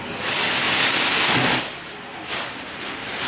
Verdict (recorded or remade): recorded